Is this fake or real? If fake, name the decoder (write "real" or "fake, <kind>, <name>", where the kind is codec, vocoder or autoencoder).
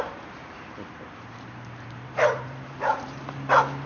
fake, vocoder, BigVGAN v2